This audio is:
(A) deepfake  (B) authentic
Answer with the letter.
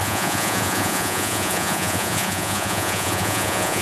A